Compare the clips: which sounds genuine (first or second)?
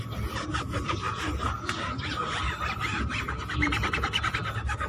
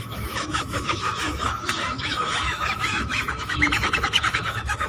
first